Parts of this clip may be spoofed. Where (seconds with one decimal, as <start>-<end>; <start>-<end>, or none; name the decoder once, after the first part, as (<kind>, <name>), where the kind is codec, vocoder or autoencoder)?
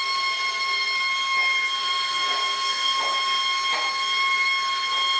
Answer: 1.8-3.0 (codec, SNAC)